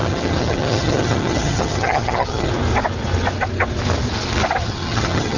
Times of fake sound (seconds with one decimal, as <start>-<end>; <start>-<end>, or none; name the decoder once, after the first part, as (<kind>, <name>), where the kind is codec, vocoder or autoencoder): 0.0-2.5 (vocoder, HiFi-GAN); 4.6-5.4